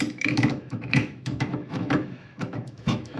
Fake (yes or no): yes